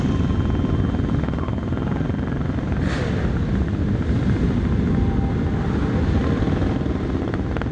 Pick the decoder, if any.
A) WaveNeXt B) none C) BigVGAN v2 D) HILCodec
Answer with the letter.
B